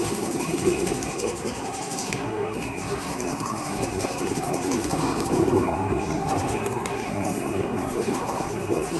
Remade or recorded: remade